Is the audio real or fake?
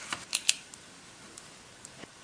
real